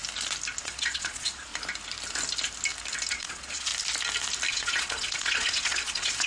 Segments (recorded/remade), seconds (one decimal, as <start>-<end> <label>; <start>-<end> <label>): 0.0-0.6 recorded; 0.6-1.5 remade; 1.5-3.1 recorded; 3.1-3.7 remade; 3.7-4.5 recorded; 4.5-6.3 remade